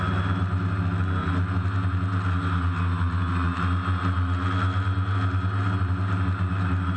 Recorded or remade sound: recorded